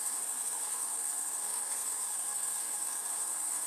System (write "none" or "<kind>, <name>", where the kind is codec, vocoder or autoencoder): codec, SNAC